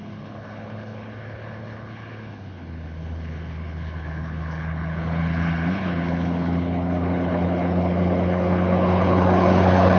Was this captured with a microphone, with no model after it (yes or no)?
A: no